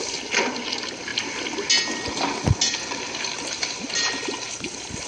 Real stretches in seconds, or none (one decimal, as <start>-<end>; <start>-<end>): 0.0-5.1